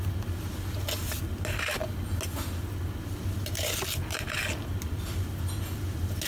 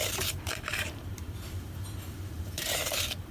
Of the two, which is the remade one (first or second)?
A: second